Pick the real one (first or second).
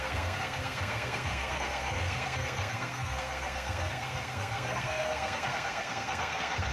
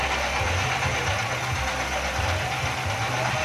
second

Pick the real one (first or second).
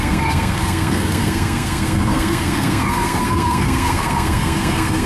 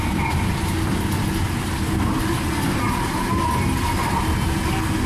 second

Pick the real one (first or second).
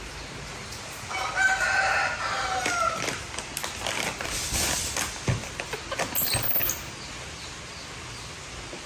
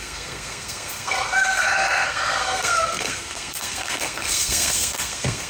first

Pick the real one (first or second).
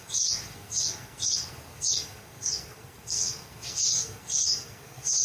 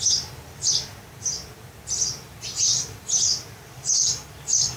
second